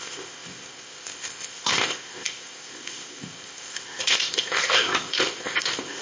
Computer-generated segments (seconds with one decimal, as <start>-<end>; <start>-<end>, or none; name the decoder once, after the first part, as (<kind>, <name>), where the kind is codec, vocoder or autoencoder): 0.0-6.0 (codec, ZipCodec)